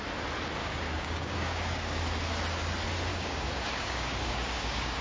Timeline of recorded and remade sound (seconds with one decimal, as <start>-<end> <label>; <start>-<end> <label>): 0.0-0.6 recorded; 0.6-2.0 remade; 2.0-3.1 recorded; 3.1-5.0 remade